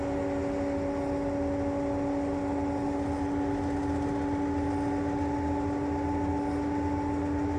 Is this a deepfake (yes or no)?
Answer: no